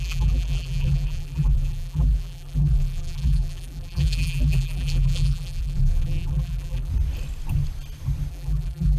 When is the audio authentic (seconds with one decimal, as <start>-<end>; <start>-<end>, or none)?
6.9-8.3